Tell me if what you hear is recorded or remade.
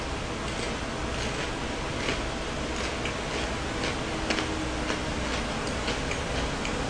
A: recorded